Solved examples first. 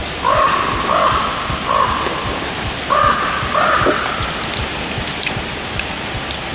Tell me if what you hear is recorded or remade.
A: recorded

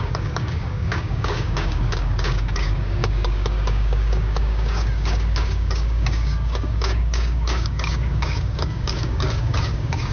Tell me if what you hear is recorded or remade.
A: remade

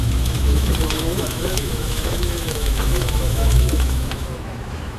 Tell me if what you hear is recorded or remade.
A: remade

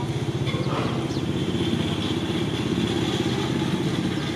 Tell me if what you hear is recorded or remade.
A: recorded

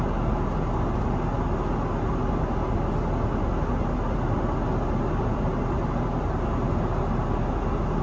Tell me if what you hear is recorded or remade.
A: recorded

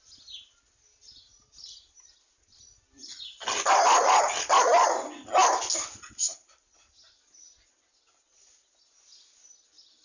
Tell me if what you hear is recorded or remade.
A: recorded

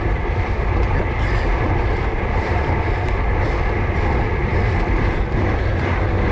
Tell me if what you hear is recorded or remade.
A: remade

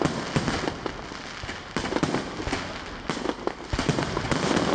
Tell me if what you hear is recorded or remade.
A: recorded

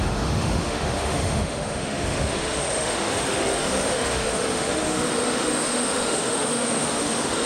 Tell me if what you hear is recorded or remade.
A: remade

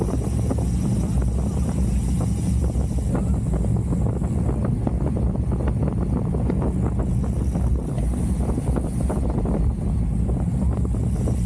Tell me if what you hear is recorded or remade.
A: recorded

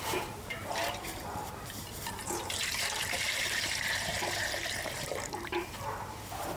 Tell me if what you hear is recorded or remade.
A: remade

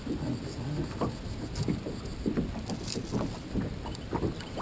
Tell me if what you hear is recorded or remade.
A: recorded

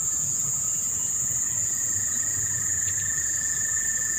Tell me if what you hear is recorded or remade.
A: remade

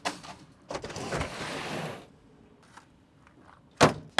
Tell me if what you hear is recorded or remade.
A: recorded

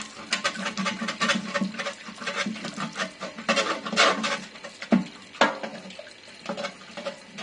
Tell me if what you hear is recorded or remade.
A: recorded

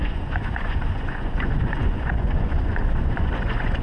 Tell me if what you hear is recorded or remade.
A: remade